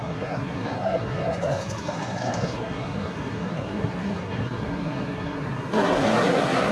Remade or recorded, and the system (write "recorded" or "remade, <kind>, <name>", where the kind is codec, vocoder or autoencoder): remade, codec, SNAC